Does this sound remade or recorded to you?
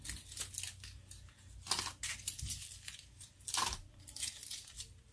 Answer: recorded